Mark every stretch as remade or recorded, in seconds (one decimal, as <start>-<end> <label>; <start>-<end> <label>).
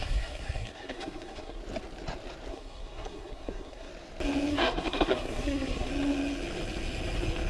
0.0-1.6 remade; 1.6-2.5 recorded; 2.5-3.9 remade; 3.9-4.5 recorded; 4.5-5.9 remade; 5.9-7.5 recorded